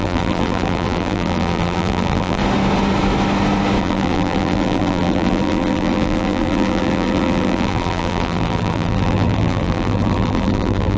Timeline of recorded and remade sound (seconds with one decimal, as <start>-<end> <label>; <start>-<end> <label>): 0.0-2.4 remade; 2.4-3.8 recorded; 3.8-11.0 remade